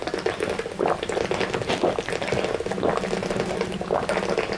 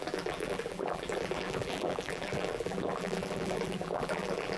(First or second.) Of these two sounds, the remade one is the second